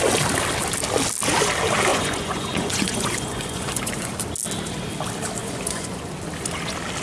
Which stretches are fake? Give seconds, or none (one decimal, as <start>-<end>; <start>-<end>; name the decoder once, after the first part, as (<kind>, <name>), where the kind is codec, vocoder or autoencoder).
1.9-4.1 (vocoder, Vocos); 5.4-6.1

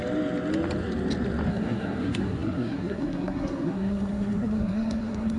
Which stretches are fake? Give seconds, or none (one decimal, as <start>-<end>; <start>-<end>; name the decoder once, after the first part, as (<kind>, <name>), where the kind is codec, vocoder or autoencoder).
1.5-5.4 (codec, SNAC)

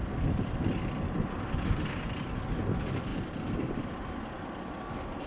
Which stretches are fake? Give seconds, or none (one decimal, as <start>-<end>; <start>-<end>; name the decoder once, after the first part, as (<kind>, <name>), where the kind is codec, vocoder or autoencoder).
3.1-4.0 (vocoder, BigVGAN v2)

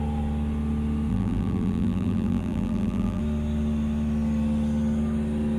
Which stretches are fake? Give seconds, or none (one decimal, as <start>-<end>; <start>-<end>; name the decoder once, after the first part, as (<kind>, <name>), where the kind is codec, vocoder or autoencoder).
1.1-3.2 (vocoder, BigVGAN v2)

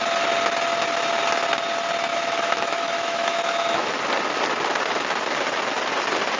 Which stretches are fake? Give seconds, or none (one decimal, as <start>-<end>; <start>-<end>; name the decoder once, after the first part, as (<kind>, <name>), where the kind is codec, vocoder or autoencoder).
2.1-3.9 (autoencoder, DAC-VAE)